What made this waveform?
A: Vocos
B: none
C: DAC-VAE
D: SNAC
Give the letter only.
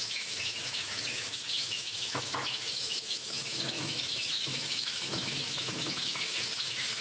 C